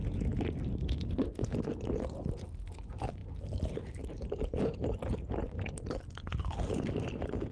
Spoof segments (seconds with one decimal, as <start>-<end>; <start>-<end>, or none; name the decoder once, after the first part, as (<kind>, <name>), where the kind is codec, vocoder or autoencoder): 0.0-1.9 (vocoder, BigVGAN v2); 3.2-7.5